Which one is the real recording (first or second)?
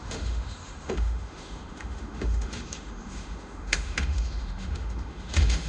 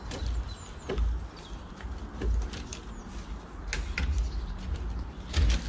second